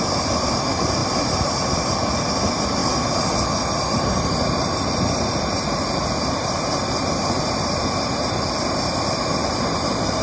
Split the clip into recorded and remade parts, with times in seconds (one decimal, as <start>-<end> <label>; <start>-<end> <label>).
0.0-10.2 recorded